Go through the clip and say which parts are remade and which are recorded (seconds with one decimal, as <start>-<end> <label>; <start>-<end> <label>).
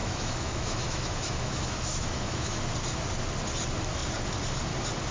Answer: 0.0-2.6 remade; 2.6-5.1 recorded